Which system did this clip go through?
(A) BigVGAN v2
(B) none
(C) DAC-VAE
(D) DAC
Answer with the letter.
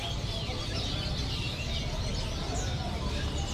B